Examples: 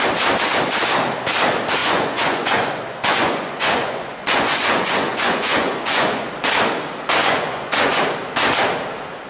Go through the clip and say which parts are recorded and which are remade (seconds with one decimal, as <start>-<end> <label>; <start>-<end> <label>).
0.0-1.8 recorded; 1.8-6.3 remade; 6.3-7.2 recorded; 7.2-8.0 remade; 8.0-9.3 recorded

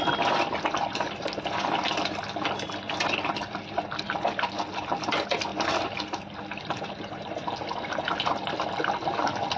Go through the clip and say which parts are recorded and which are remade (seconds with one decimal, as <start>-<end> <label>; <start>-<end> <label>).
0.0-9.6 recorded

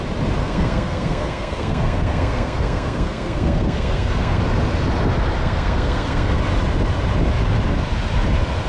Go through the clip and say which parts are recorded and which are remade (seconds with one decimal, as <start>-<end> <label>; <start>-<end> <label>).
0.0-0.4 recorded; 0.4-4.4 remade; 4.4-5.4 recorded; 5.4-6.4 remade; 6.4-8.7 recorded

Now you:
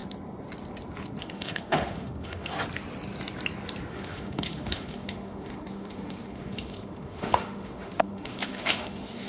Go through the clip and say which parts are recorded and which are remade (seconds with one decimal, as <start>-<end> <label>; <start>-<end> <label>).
0.0-1.2 recorded; 1.2-2.5 remade; 2.5-3.9 recorded; 3.9-9.3 remade